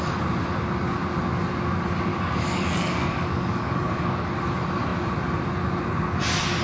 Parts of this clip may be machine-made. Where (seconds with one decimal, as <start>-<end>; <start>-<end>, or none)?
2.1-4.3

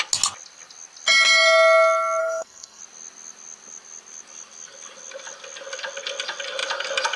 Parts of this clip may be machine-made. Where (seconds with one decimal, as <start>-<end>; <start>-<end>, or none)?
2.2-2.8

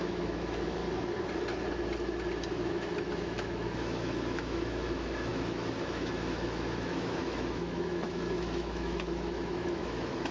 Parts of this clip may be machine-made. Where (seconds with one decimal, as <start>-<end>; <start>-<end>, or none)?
0.0-0.8; 2.5-10.3